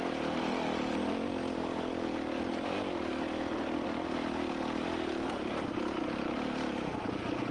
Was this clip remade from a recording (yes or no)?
no